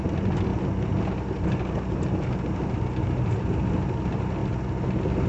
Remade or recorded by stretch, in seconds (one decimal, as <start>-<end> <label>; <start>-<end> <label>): 0.0-5.3 recorded